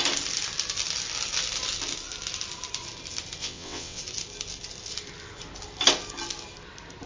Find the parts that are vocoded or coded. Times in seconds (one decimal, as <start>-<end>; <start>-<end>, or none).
3.4-4.0